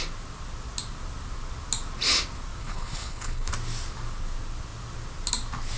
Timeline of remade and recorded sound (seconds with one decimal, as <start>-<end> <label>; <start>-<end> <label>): 0.0-2.6 recorded; 2.6-3.5 remade; 3.5-5.8 recorded